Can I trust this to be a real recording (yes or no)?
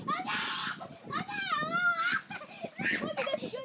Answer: yes